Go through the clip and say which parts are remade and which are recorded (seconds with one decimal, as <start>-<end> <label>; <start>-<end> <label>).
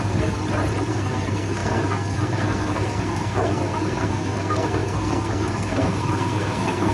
0.0-0.4 remade; 0.4-0.9 recorded; 0.9-6.9 remade